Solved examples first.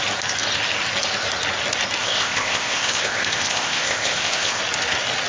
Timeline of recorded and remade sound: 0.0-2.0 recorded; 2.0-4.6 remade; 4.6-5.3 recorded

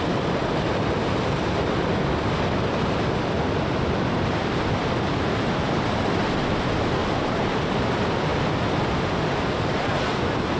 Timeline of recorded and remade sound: 0.0-7.0 recorded; 7.0-7.8 remade; 7.8-10.6 recorded

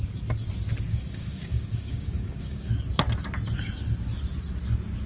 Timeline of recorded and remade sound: 0.0-0.9 recorded; 0.9-2.7 remade; 2.7-5.1 recorded

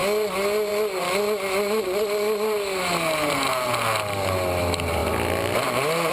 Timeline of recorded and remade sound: 0.0-6.1 recorded

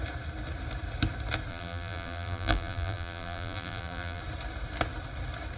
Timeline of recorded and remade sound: 0.0-1.5 recorded; 1.5-4.2 remade; 4.2-5.6 recorded

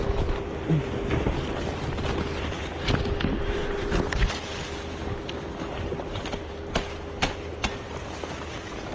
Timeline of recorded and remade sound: 0.0-8.9 recorded

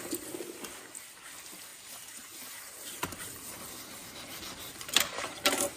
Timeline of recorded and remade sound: 0.0-1.7 recorded; 1.7-3.6 remade; 3.6-4.0 recorded; 4.0-5.8 remade

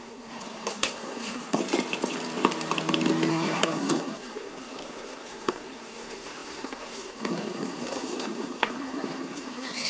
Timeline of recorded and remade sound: 0.0-1.6 remade; 1.6-3.3 recorded; 3.3-9.9 remade